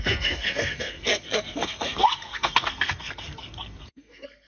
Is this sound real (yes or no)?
no